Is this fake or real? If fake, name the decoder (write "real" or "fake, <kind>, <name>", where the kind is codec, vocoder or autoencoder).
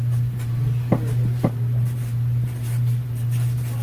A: real